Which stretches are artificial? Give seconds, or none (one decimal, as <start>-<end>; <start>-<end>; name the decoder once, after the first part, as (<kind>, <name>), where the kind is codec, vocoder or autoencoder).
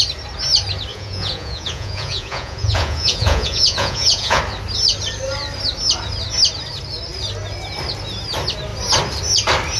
0.9-4.4 (vocoder, Vocos)